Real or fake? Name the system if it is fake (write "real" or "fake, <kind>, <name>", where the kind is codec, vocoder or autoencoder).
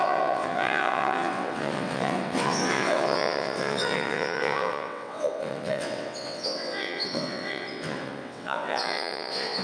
fake, vocoder, WaveNeXt